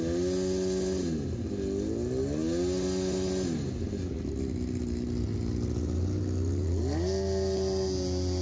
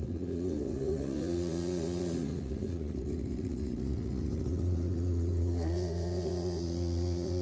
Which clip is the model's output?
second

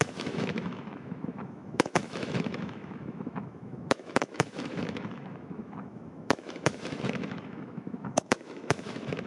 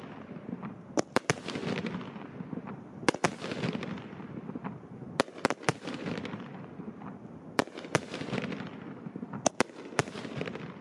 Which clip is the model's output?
first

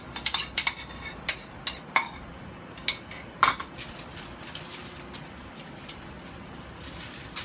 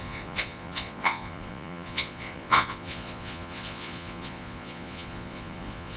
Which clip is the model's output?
second